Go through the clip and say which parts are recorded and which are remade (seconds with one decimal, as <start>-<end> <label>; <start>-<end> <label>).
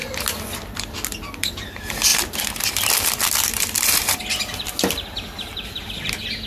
0.0-2.1 recorded; 2.1-5.9 remade; 5.9-6.5 recorded